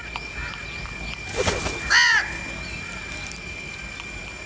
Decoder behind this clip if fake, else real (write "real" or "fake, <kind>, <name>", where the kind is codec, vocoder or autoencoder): real